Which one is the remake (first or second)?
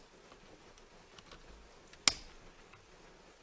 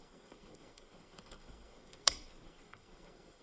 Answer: second